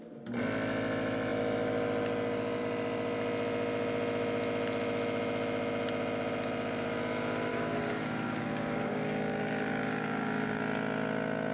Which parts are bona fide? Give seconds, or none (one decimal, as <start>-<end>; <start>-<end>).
0.0-7.5; 10.6-11.5